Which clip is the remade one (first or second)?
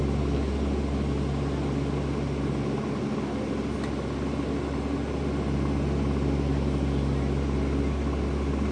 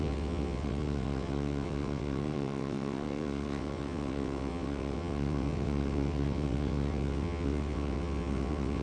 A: second